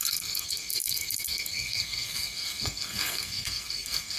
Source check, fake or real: fake